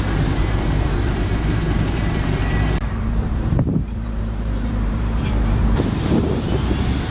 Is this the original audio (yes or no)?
no